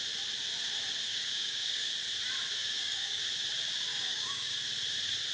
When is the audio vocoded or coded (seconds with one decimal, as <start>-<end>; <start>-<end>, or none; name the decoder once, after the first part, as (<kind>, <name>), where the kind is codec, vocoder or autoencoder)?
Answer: 1.1-1.9 (codec, DAC); 2.6-3.2; 3.9-4.5